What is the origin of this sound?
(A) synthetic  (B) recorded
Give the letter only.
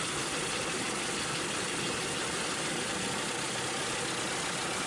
B